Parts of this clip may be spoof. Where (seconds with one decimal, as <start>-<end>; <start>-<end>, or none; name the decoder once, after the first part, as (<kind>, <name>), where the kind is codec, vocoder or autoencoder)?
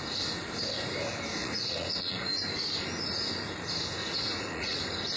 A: 1.4-2.4 (vocoder, Vocos); 4.0-4.8